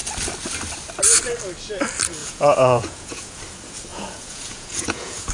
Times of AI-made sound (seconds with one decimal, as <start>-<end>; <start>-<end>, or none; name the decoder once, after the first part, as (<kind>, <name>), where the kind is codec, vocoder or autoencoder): 2.2-3.4 (vocoder, Vocos); 3.9-5.3